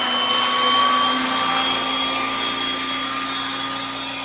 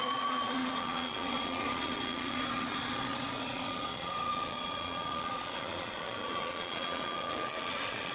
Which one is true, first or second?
first